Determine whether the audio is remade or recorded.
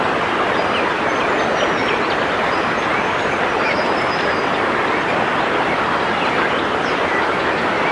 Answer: recorded